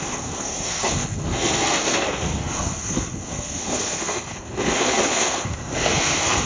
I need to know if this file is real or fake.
fake